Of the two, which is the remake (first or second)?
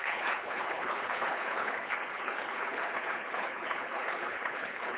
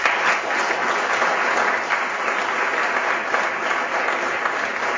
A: first